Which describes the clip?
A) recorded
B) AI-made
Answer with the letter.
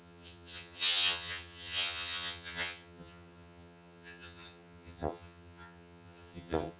B